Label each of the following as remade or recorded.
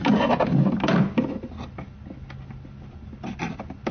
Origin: recorded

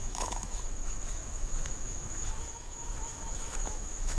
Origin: remade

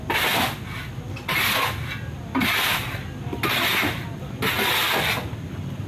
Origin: recorded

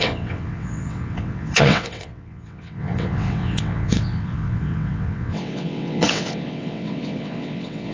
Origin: remade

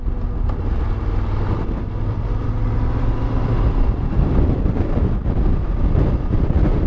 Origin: recorded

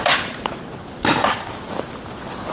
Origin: recorded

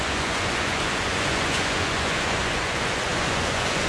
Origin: remade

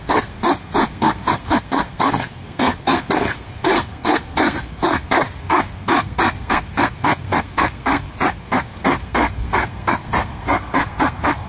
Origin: remade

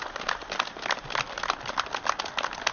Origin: recorded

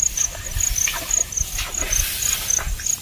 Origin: recorded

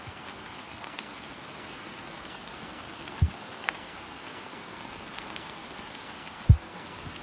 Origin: remade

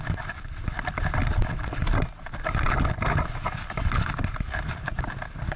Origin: recorded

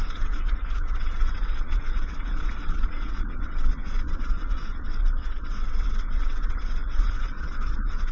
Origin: remade